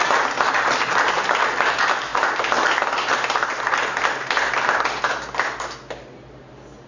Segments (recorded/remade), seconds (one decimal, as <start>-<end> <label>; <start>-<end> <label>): 0.0-6.9 recorded